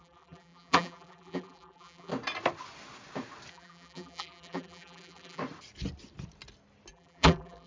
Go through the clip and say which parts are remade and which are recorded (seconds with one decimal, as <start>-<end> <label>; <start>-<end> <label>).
0.0-2.1 remade; 2.1-3.5 recorded; 3.5-5.4 remade; 5.4-6.9 recorded; 6.9-7.7 remade